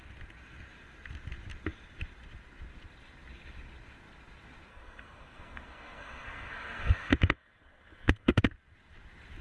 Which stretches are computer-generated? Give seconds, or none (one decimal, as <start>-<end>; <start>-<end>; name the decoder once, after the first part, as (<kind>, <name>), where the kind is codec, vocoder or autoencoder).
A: 4.7-8.4 (codec, SNAC)